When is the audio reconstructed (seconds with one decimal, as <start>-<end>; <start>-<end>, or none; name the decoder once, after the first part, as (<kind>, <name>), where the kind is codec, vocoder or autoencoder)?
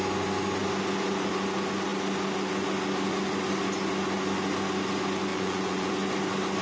5.3-5.9 (vocoder, Vocos)